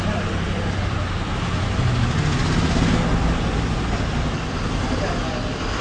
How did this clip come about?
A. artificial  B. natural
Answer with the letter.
B